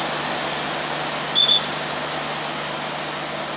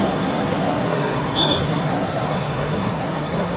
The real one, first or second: first